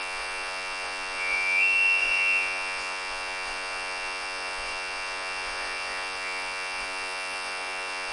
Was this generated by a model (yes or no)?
yes